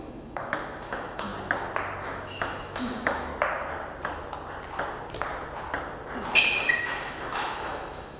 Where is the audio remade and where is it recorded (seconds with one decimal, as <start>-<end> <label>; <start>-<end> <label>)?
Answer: 0.0-1.3 remade; 1.3-2.0 recorded; 2.0-3.3 remade; 3.3-6.8 recorded; 6.8-8.2 remade